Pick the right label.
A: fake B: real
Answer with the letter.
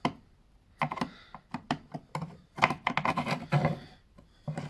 B